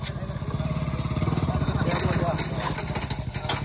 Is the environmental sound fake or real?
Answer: real